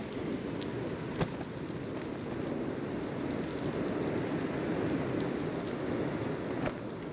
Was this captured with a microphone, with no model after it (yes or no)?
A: yes